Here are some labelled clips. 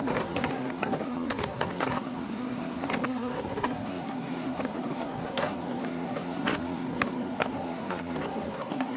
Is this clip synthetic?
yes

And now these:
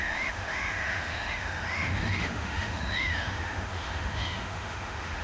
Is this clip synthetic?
yes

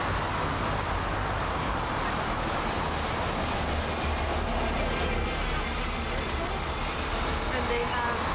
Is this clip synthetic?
no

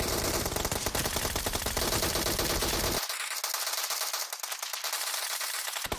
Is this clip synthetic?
no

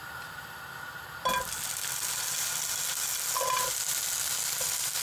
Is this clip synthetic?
no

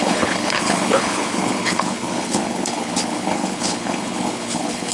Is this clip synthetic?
yes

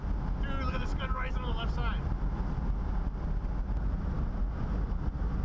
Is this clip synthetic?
no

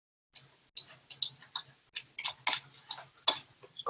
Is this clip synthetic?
no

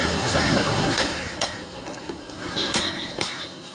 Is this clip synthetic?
yes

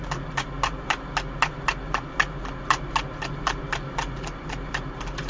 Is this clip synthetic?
no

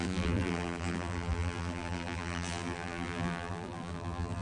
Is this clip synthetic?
yes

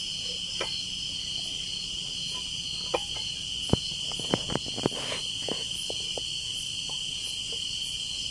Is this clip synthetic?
no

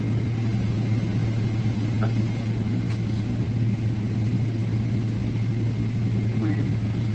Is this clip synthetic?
no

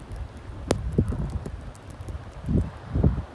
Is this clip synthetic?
no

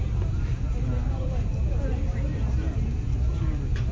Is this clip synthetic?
no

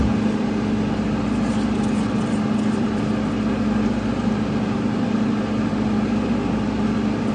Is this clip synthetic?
no